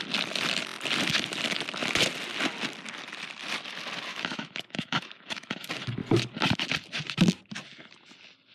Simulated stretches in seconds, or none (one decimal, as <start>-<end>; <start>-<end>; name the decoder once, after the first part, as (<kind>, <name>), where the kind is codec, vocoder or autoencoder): 4.1-5.7 (autoencoder, DAC-VAE)

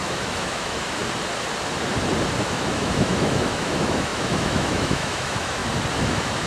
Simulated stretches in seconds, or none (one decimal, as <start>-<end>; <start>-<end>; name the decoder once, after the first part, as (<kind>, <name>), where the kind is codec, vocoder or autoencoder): 0.0-1.0 (autoencoder, DAC-VAE); 2.4-5.6; 6.1-6.5

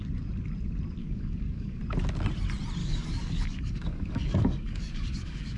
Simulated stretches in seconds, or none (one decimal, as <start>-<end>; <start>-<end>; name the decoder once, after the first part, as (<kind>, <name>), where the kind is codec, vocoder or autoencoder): 1.0-1.8 (codec, DAC); 2.8-5.6

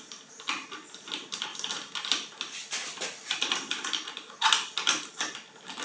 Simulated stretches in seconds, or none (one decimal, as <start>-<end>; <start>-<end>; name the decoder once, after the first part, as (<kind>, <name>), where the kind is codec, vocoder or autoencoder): none

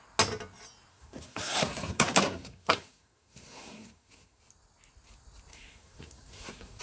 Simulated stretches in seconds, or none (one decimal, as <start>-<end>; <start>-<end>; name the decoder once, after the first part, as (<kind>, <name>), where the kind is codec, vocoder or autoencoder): 0.9-4.4 (codec, SNAC); 5.5-6.8

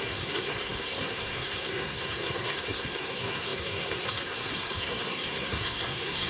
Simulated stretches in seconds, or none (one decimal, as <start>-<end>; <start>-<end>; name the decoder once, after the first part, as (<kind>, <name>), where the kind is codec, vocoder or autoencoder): 0.0-6.3 (codec, SNAC)